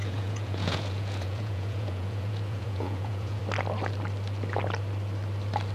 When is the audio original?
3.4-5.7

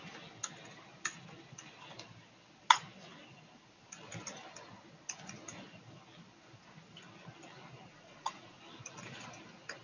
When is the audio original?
0.0-7.9; 8.6-9.8

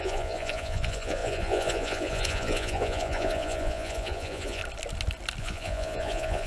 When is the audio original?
4.6-5.4

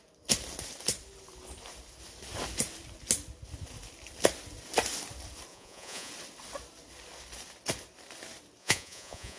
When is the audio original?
0.0-5.5; 6.1-8.6

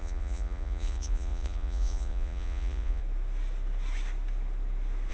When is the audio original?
3.0-5.1

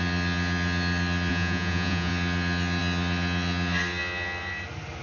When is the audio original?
0.0-1.3; 2.1-5.0

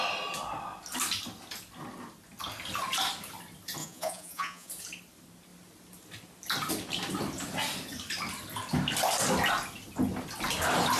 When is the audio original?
0.0-3.8; 4.7-11.0